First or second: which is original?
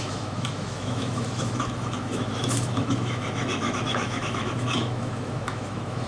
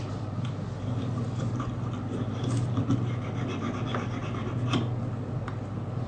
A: second